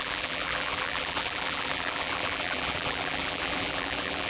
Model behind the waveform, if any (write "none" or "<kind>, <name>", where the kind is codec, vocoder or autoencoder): vocoder, BigVGAN v2